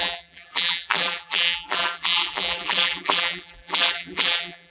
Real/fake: fake